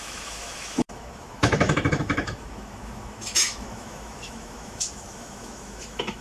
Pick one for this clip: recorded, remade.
remade